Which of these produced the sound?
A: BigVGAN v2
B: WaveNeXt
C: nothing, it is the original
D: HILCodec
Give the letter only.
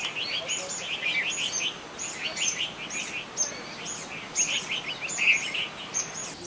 C